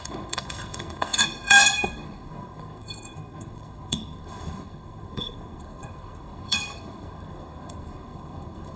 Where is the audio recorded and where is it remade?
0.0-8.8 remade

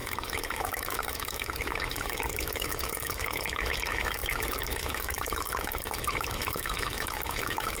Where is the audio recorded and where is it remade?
0.0-7.8 remade

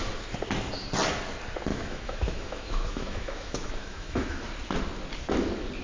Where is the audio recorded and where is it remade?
0.0-1.7 recorded; 1.7-4.4 remade; 4.4-5.8 recorded

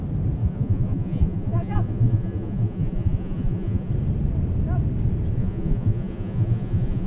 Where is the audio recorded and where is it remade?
0.0-0.4 recorded; 0.4-3.9 remade; 3.9-5.4 recorded; 5.4-7.1 remade